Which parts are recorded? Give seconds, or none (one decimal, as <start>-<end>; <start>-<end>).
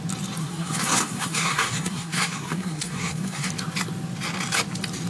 0.0-0.4; 3.5-5.1